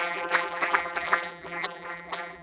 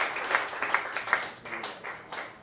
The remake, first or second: first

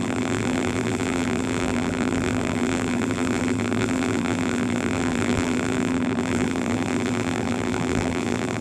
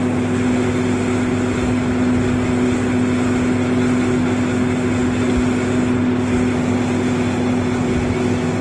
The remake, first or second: first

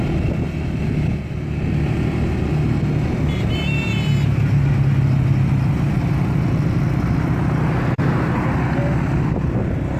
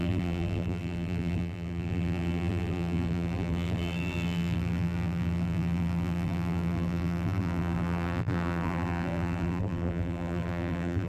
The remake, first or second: second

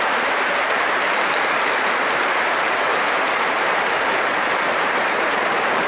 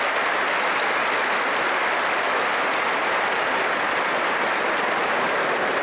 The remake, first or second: first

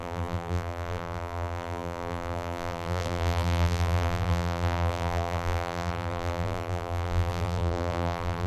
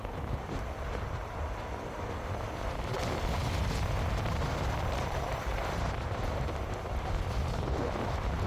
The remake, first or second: first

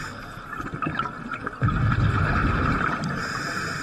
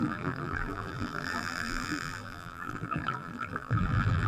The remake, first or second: second